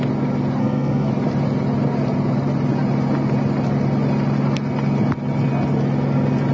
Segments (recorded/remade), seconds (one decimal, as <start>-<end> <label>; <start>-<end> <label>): 0.0-0.6 recorded; 0.6-1.1 remade; 1.1-6.5 recorded